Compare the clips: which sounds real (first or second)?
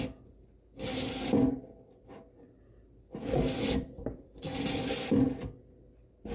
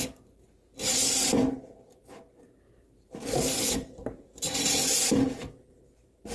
first